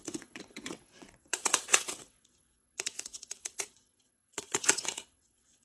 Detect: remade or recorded remade